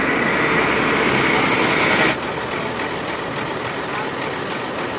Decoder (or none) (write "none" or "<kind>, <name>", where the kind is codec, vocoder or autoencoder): none